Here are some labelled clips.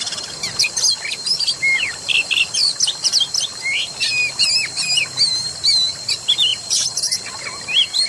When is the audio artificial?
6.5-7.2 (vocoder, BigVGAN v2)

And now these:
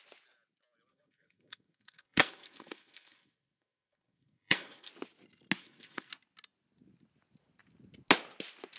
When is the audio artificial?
0.9-4.9 (codec, SNAC); 5.6-6.1

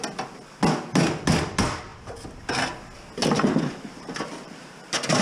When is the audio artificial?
3.2-5.2 (vocoder, BigVGAN v2)

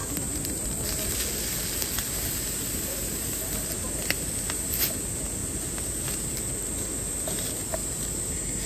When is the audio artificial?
none

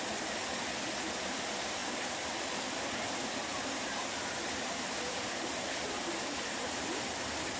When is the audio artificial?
3.5-7.6 (vocoder, BigVGAN v2)